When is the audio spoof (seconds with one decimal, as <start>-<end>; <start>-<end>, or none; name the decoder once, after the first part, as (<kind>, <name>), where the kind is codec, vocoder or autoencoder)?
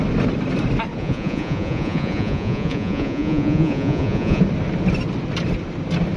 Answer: 1.0-4.4 (vocoder, Vocos)